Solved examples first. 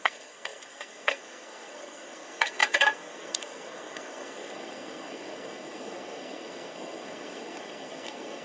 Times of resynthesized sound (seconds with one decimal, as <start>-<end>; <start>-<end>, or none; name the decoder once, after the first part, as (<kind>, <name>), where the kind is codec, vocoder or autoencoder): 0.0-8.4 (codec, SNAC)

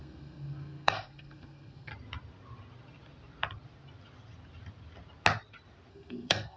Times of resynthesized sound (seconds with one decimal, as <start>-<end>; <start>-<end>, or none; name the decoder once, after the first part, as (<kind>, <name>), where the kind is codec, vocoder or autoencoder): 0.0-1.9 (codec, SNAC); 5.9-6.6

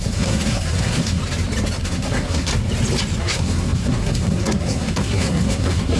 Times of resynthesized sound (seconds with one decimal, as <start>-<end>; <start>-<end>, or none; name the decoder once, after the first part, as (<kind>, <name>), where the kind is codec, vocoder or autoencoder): 0.0-1.2 (codec, SNAC); 1.8-2.5; 3.2-6.0

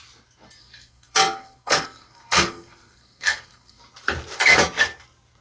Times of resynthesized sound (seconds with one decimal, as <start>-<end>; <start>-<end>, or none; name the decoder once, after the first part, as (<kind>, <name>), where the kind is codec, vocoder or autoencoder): 0.6-3.8 (codec, SNAC)

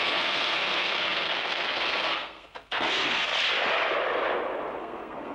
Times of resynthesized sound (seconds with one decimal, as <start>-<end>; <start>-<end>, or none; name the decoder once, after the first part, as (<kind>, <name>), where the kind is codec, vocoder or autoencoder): 0.0-3.3 (codec, SNAC); 4.8-5.3